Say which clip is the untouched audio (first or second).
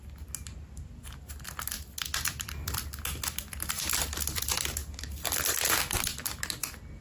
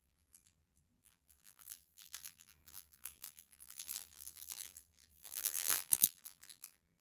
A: first